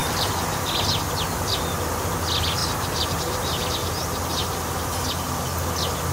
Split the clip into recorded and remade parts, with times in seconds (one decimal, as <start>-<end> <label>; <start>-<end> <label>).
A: 0.0-4.4 recorded; 4.4-4.9 remade; 4.9-6.1 recorded